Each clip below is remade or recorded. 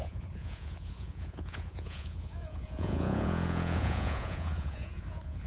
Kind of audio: remade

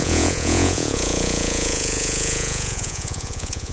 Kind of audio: remade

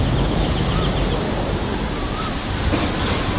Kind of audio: recorded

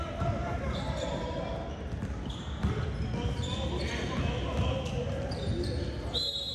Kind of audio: recorded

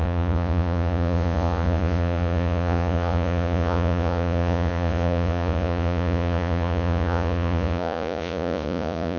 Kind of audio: remade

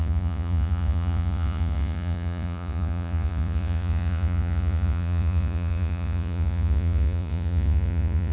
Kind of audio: remade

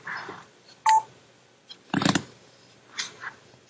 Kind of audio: recorded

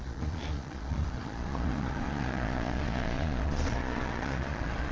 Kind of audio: remade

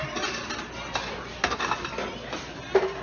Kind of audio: recorded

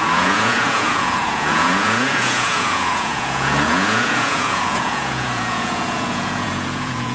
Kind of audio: remade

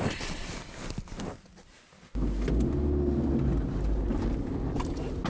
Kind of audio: recorded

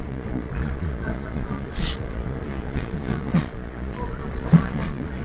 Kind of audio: remade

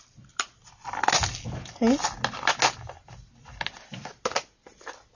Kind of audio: recorded